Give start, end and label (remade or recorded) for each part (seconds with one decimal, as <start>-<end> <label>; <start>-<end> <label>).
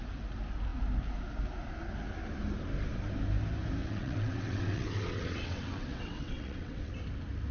0.0-3.8 recorded; 3.8-6.9 remade; 6.9-7.5 recorded